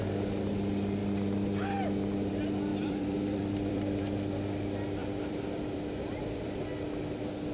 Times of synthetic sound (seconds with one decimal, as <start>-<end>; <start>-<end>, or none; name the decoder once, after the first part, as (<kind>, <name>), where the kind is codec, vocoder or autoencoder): 2.7-4.0 (vocoder, BigVGAN v2); 5.0-6.6